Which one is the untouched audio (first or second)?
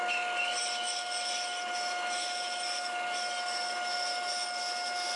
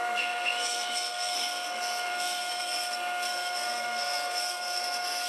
first